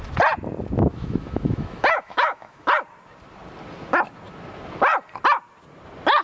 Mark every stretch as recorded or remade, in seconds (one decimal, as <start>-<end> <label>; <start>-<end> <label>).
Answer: 0.0-0.9 recorded; 0.9-2.7 remade; 2.7-6.2 recorded